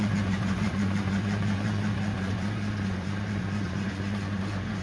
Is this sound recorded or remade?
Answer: remade